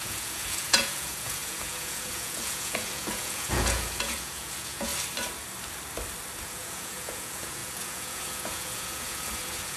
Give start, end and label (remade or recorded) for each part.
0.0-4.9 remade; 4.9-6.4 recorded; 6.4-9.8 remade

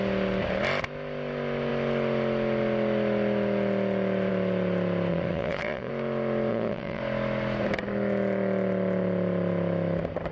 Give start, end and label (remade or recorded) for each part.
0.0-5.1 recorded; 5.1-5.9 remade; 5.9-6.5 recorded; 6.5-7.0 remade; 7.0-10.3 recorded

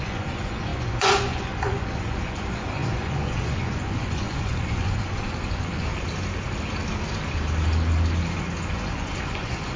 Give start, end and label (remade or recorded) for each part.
0.0-5.9 remade; 5.9-8.7 recorded; 8.7-9.8 remade

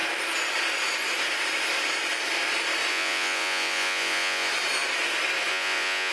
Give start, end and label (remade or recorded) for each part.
0.0-2.9 recorded; 2.9-4.5 remade; 4.5-5.5 recorded; 5.5-6.1 remade

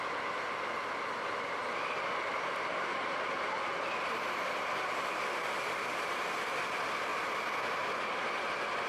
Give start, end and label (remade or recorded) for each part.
0.0-8.9 recorded

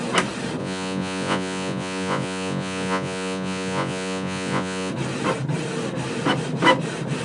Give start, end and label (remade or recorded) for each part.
0.0-0.6 recorded; 0.6-4.9 remade; 4.9-7.2 recorded

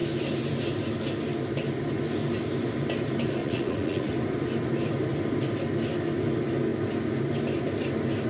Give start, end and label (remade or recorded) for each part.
0.0-3.4 recorded; 3.4-4.1 remade; 4.1-8.3 recorded